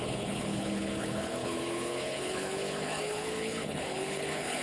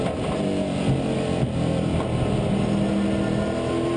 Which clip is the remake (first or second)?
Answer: first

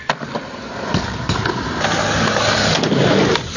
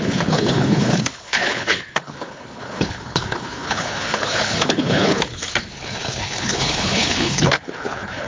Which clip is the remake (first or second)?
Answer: second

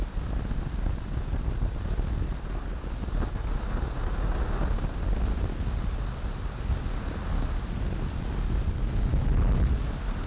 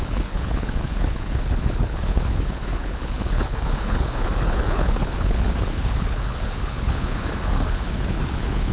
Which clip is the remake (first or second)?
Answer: second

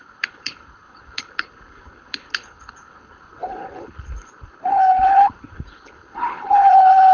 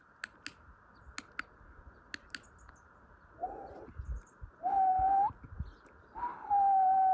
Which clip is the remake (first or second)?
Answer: first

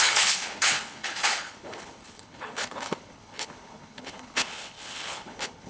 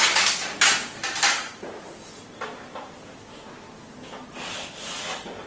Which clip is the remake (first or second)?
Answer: first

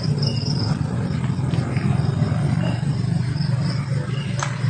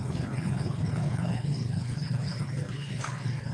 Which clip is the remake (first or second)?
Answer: second